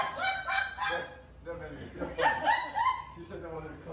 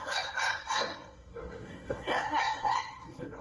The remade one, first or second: second